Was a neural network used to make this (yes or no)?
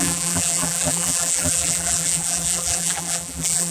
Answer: yes